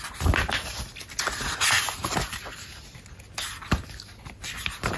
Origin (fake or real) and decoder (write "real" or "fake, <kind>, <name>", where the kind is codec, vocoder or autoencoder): real